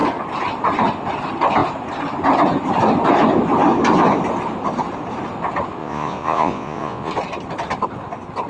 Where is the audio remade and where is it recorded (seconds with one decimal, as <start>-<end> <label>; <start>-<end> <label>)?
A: 0.0-5.8 recorded; 5.8-7.1 remade; 7.1-8.5 recorded